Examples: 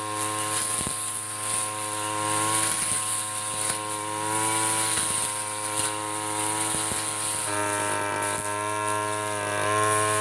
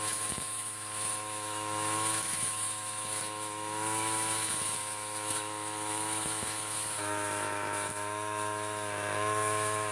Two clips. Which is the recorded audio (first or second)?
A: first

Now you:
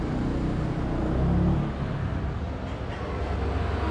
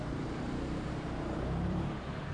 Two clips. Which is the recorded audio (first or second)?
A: first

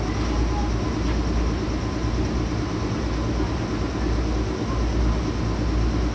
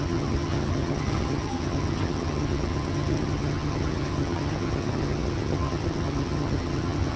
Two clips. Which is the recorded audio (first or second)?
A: first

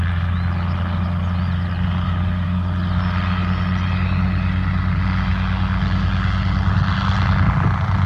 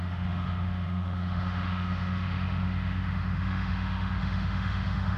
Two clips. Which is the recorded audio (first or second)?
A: first